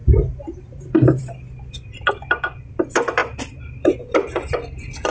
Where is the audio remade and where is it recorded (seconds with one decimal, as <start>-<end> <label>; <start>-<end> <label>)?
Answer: 0.0-1.2 remade; 1.2-3.2 recorded; 3.2-3.9 remade; 3.9-5.1 recorded